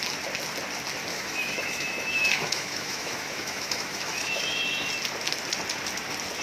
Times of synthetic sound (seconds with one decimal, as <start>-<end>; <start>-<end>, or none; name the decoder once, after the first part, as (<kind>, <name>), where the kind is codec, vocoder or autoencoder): 1.1-4.9 (autoencoder, DAC-VAE)